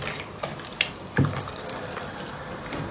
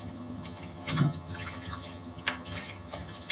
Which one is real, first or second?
first